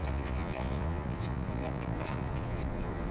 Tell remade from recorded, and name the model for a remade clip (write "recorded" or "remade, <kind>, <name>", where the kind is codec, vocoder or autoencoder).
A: remade, vocoder, Vocos